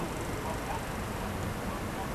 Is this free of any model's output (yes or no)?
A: yes